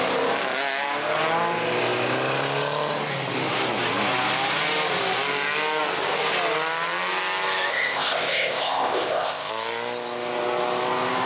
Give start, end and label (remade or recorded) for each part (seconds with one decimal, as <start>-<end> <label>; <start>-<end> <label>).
0.0-7.7 recorded; 7.7-9.5 remade; 9.5-11.3 recorded